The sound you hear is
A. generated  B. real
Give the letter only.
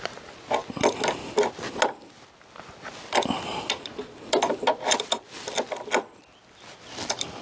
B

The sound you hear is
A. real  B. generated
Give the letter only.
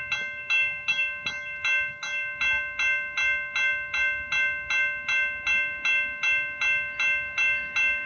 A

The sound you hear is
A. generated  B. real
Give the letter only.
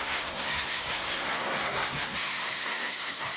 A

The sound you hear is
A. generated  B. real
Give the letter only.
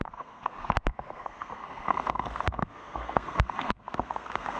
A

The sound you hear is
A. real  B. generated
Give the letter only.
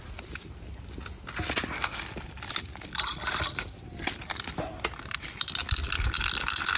A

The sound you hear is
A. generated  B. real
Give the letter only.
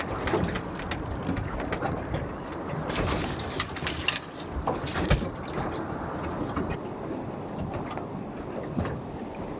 B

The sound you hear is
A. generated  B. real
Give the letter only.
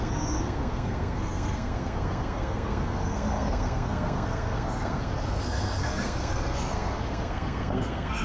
A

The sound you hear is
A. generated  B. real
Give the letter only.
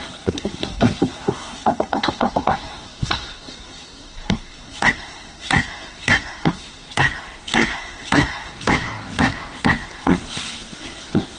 A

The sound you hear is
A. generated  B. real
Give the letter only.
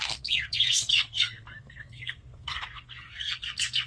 A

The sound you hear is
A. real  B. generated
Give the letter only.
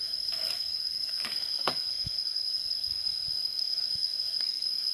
B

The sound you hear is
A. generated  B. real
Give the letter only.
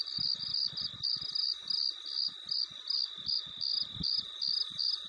B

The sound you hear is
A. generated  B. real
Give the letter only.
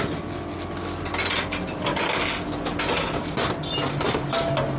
B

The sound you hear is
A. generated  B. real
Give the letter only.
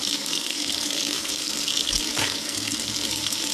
A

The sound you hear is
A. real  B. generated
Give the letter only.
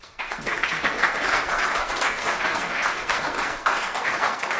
B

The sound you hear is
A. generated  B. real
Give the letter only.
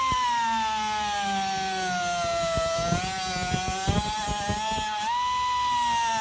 B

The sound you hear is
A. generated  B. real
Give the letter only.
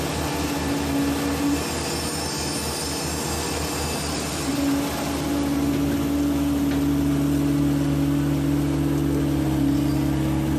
B